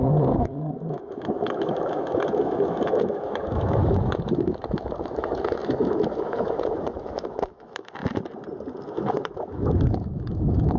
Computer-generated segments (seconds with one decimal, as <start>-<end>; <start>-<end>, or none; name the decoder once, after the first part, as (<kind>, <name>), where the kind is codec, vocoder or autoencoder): 0.0-8.0 (autoencoder, DAC-VAE); 8.9-10.8